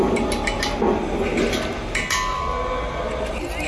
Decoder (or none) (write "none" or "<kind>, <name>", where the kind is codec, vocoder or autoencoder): none